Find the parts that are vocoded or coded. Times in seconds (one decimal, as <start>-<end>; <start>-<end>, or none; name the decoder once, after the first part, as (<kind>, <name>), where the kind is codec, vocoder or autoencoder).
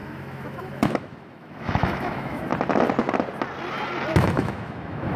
0.0-2.5 (autoencoder, DAC-VAE); 4.2-5.2